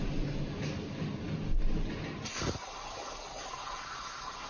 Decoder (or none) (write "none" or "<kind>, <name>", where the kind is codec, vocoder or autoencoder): none